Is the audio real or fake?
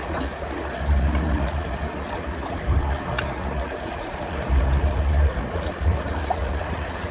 fake